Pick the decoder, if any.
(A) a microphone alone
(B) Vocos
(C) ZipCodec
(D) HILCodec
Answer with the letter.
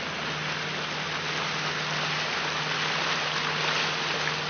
A